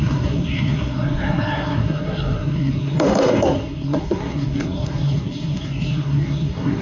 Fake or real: fake